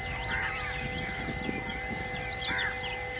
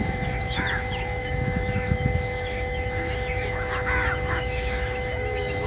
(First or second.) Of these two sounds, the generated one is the second